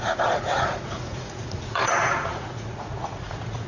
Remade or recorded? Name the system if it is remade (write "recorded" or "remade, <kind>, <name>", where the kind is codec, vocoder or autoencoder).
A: remade, vocoder, Vocos